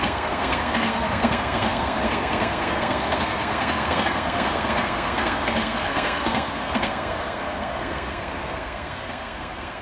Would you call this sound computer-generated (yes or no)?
yes